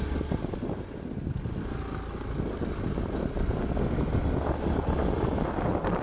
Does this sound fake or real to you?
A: real